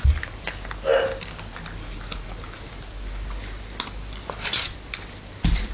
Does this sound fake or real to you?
real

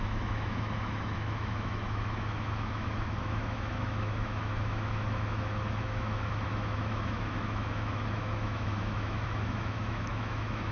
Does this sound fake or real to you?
fake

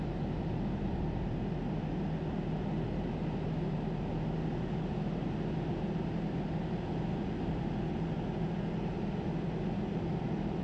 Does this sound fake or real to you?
real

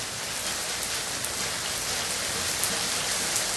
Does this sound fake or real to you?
real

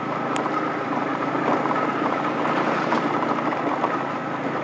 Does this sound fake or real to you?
real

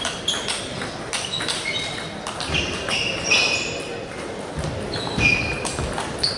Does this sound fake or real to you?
real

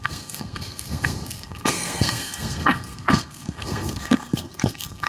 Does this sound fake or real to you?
fake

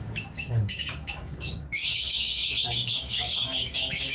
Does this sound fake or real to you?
fake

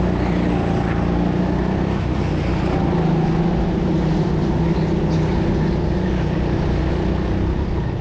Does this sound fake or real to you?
real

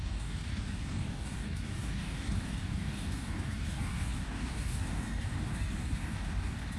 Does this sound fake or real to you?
fake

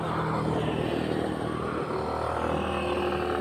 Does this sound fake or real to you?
real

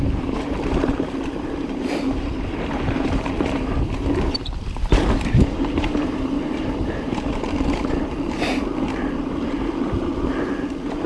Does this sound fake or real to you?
fake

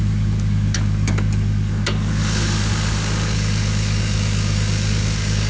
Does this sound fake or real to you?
fake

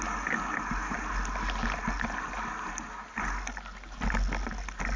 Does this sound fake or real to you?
real